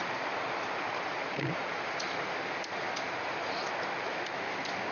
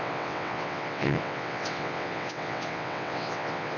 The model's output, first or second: second